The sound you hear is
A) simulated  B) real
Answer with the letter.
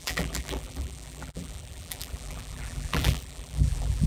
A